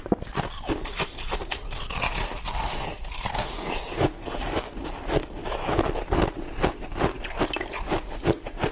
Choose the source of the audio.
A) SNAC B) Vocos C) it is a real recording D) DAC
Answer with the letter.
C